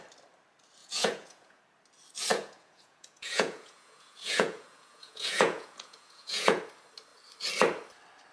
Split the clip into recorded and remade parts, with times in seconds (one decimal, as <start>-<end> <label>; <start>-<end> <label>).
0.0-0.8 recorded; 0.8-1.6 remade; 1.6-2.3 recorded; 2.3-6.6 remade; 6.6-8.3 recorded